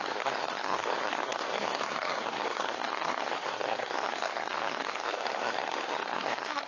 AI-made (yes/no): yes